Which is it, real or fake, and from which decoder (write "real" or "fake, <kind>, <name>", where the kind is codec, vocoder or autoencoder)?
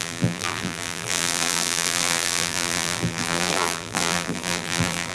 fake, vocoder, BigVGAN v2